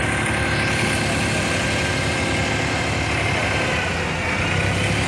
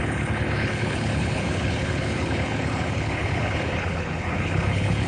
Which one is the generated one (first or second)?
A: second